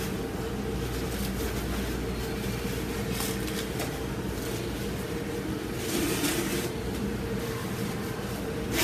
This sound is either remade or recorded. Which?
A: recorded